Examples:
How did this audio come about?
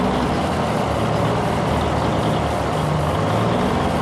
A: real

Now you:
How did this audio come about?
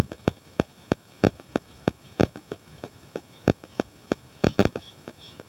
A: fake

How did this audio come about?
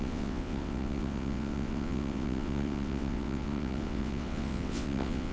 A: fake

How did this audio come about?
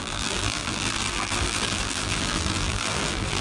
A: fake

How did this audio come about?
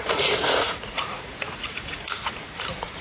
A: fake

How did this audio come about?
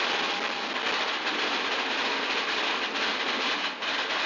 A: real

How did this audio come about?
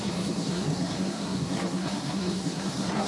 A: fake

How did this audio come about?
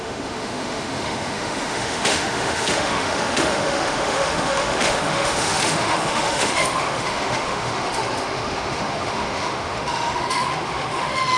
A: fake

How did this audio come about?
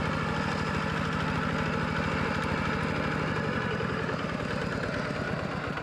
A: real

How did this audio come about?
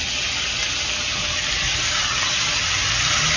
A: real